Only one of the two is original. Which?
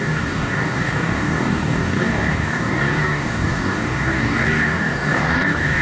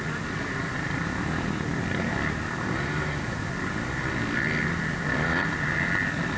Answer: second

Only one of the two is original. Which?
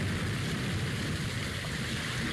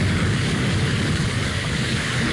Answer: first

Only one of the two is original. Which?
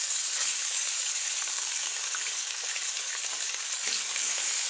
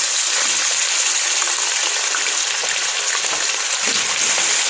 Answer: second